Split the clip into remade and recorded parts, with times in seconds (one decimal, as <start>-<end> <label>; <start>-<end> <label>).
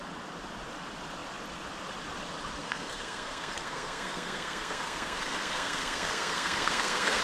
0.0-2.6 recorded; 2.6-7.2 remade